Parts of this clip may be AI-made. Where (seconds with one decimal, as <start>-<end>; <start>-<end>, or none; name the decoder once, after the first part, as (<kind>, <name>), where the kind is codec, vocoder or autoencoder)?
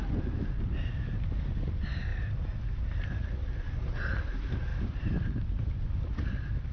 none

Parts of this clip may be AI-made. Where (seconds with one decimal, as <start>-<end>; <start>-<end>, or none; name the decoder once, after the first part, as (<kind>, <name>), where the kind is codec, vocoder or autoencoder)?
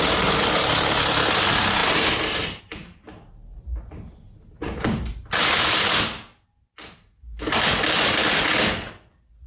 none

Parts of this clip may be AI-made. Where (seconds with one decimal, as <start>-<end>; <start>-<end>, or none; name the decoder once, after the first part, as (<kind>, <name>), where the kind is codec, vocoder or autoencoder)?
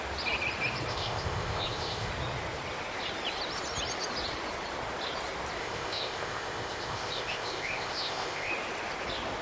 0.9-2.1 (codec, ZipCodec); 5.6-8.5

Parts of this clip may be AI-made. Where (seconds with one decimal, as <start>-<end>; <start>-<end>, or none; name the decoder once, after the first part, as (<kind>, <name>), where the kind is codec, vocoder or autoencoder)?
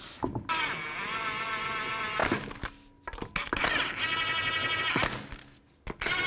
none